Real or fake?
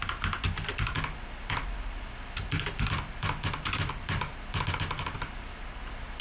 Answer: real